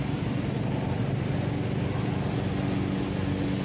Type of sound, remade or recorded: recorded